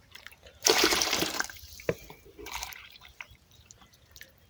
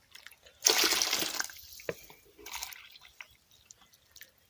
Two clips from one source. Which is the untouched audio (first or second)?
second